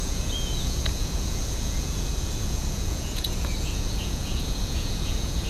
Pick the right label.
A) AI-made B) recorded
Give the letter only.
A